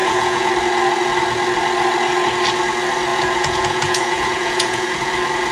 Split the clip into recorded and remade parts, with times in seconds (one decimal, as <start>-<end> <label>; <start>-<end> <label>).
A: 0.0-0.5 remade; 0.5-3.1 recorded; 3.1-5.1 remade; 5.1-5.5 recorded

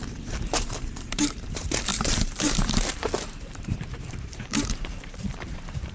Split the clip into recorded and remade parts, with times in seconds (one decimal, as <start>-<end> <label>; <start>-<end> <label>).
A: 0.0-5.9 remade

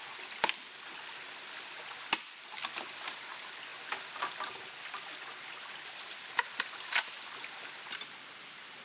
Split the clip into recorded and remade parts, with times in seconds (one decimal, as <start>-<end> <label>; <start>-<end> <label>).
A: 0.0-8.8 recorded